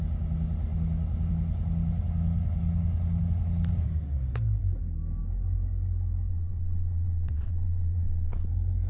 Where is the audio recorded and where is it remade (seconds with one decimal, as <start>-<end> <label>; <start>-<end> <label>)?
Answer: 0.0-6.3 recorded; 6.3-8.5 remade; 8.5-8.9 recorded